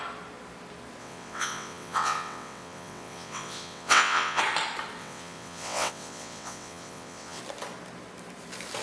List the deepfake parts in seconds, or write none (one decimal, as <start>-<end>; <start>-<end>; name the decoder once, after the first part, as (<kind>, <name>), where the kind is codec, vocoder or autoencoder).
1.0-4.4 (vocoder, WaveNeXt); 5.0-7.4